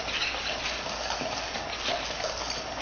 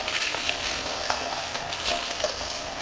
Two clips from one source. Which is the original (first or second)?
first